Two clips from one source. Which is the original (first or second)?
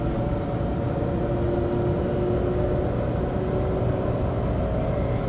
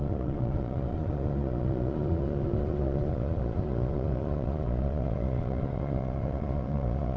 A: first